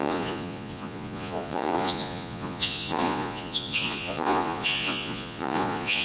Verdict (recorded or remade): remade